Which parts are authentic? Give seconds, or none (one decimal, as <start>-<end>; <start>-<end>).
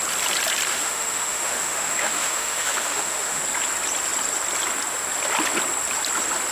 0.0-0.7; 3.4-6.5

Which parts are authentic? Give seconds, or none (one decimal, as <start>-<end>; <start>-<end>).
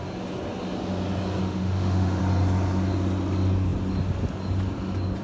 0.0-1.4; 2.2-5.2